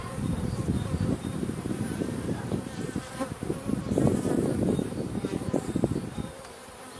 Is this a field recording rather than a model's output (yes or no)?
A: no